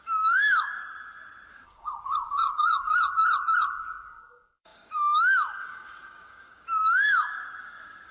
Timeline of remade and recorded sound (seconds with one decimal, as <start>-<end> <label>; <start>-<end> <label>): 0.0-0.8 remade; 0.8-1.5 recorded; 1.5-3.2 remade; 3.2-4.2 recorded; 4.2-8.1 remade

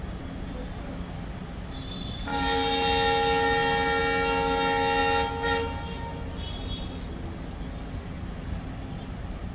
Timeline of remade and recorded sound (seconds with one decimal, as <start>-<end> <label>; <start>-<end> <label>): 0.0-9.5 recorded

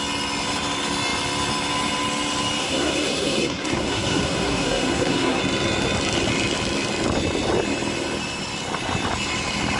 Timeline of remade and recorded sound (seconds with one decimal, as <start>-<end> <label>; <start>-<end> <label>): 0.0-2.6 recorded; 2.6-5.4 remade; 5.4-9.8 recorded

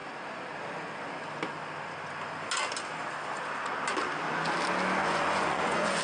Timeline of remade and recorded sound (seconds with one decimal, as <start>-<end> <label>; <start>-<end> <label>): 0.0-5.0 recorded; 5.0-6.0 remade

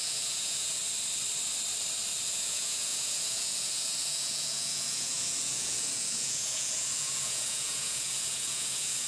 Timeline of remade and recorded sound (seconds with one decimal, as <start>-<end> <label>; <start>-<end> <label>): 0.0-0.8 remade; 0.8-2.2 recorded; 2.2-9.1 remade